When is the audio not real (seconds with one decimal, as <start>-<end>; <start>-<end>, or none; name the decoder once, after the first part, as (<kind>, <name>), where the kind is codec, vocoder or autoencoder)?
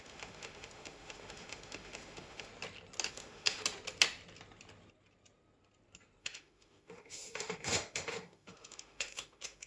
0.0-2.5 (autoencoder, DAC-VAE); 3.1-3.6; 6.2-9.7